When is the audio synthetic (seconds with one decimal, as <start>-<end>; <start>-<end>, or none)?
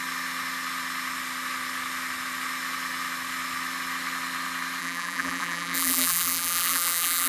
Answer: 4.8-7.3